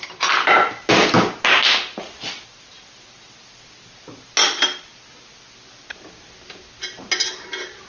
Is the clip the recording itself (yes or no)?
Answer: yes